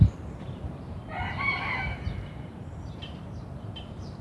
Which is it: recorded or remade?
remade